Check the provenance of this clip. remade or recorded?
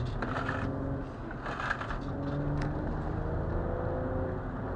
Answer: recorded